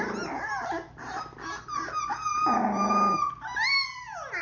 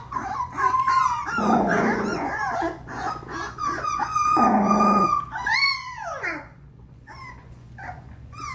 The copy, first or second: second